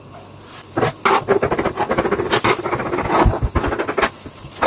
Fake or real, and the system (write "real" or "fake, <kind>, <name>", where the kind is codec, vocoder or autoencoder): real